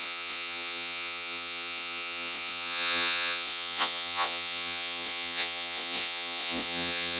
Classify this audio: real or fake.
fake